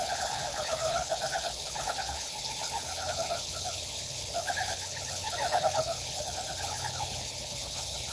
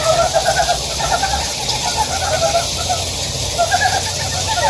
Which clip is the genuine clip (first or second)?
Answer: second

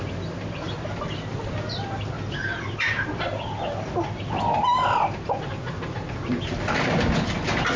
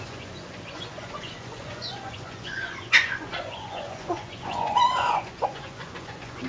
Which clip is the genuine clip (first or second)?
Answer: first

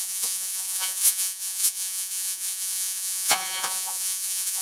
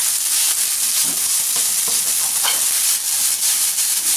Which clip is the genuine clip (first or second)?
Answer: second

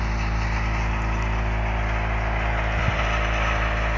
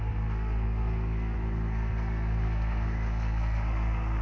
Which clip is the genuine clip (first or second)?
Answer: first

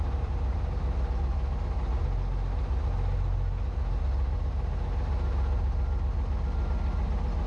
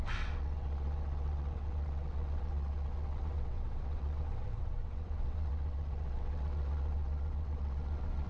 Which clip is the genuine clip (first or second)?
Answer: first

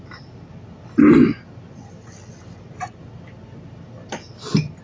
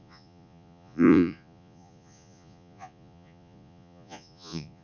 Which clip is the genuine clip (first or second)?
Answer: first